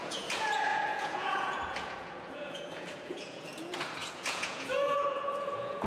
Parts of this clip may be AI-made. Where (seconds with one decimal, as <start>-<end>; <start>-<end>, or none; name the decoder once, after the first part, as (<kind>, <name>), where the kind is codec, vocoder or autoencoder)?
0.0-5.9 (vocoder, Vocos)